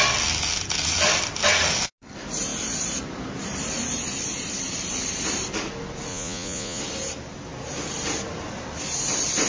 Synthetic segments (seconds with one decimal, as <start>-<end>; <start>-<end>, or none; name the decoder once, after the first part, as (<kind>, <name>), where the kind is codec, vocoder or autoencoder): 6.1-6.8 (vocoder, Vocos)